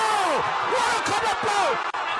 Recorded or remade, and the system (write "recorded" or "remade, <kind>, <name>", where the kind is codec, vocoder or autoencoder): recorded